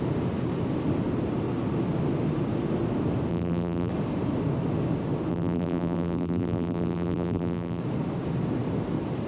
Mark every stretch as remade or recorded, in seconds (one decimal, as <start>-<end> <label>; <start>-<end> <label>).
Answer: 0.0-3.3 recorded; 3.3-3.9 remade; 3.9-5.3 recorded; 5.3-7.8 remade; 7.8-9.3 recorded